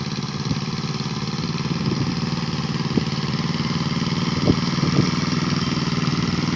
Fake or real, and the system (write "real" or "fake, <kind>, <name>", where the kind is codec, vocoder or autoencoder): real